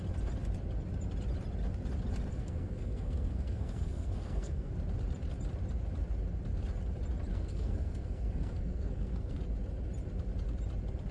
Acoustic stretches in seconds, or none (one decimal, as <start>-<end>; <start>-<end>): 0.0-2.3; 4.7-7.3; 9.4-11.1